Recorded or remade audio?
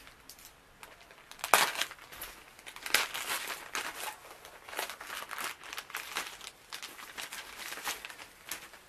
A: recorded